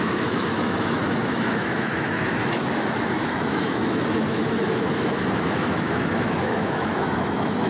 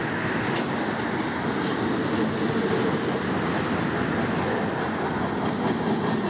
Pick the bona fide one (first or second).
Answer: second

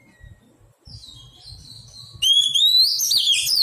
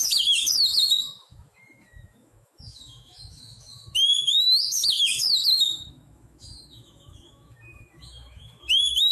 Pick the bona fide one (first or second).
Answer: first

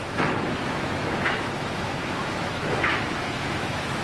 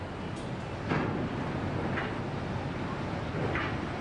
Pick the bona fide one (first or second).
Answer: second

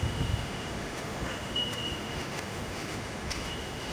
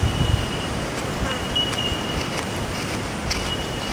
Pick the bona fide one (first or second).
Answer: second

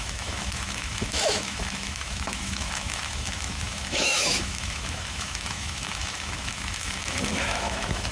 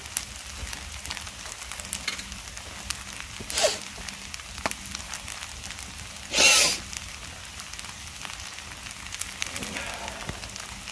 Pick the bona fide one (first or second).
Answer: second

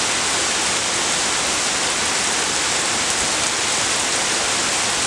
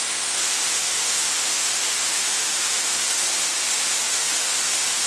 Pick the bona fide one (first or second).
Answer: first